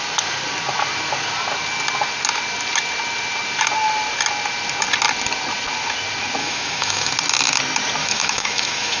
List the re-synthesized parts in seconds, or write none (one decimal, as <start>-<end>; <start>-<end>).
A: 6.4-7.1; 8.0-9.0

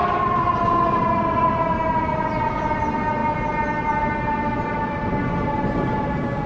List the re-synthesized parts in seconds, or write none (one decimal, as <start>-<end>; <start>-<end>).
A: none

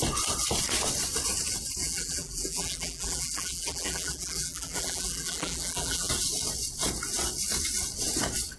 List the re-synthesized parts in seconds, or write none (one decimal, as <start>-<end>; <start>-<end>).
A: 1.8-6.1

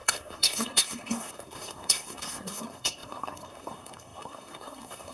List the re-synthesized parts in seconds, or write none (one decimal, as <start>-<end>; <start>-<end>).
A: 0.0-5.1

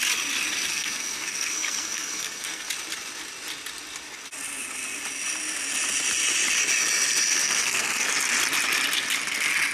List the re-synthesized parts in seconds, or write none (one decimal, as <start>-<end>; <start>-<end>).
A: 0.7-2.7; 7.3-8.1